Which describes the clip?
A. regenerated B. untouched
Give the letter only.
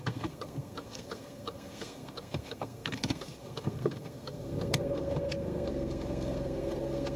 A